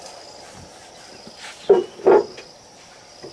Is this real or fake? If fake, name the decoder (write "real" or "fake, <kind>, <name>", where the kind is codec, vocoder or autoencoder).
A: real